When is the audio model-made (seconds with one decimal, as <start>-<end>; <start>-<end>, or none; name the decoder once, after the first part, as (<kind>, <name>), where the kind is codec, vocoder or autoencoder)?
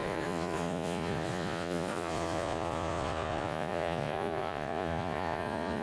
0.0-5.8 (vocoder, Vocos)